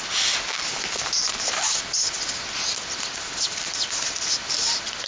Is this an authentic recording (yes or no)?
yes